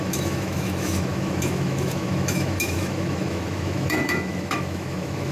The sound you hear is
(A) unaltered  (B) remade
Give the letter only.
B